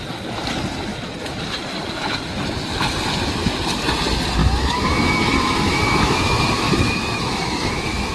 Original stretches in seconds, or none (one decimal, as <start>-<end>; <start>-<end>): 0.0-4.4